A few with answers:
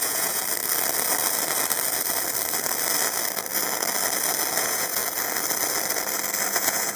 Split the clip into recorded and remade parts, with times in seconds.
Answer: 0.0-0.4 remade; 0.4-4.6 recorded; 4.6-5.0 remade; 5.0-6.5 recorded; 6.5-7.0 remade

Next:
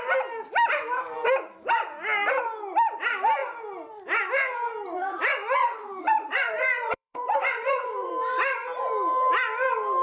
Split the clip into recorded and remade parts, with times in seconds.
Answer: 0.0-5.6 recorded; 5.6-8.1 remade; 8.1-10.0 recorded

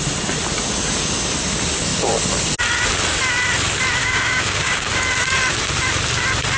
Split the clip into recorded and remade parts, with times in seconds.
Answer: 0.0-4.0 recorded; 4.0-4.9 remade; 4.9-6.6 recorded

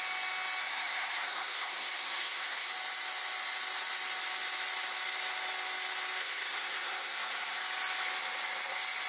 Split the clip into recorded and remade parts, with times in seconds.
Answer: 0.0-0.6 recorded; 0.6-2.7 remade; 2.7-6.2 recorded; 6.2-7.6 remade; 7.6-9.1 recorded

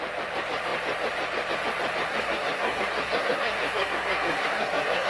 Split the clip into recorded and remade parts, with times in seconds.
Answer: 0.0-2.1 recorded; 2.1-5.1 remade

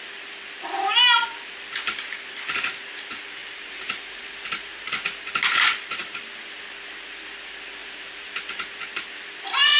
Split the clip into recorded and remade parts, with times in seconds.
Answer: 0.0-3.4 recorded; 3.4-4.9 remade; 4.9-7.8 recorded; 7.8-8.4 remade; 8.4-9.8 recorded

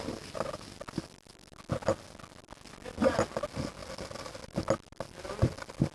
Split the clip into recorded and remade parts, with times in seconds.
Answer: 0.0-5.9 recorded

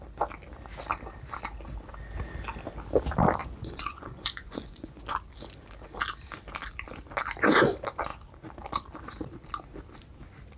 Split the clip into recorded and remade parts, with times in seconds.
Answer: 0.0-3.4 recorded; 3.4-5.0 remade; 5.0-10.6 recorded